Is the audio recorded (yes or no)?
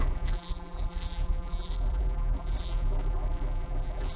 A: no